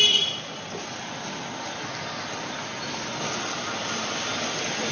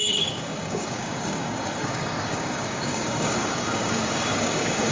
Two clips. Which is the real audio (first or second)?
first